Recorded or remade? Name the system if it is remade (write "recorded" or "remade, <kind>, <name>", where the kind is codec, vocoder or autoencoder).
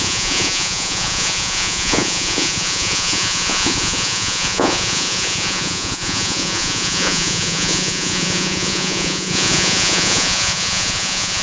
remade, vocoder, Vocos